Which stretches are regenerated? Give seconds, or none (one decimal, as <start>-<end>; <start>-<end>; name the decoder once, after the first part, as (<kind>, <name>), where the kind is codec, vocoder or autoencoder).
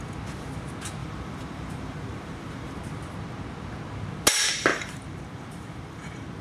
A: 1.0-2.7 (vocoder, BigVGAN v2); 4.7-6.4